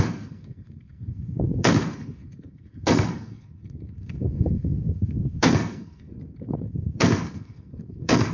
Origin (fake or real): fake